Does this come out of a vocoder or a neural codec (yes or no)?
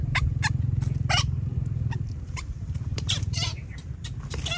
no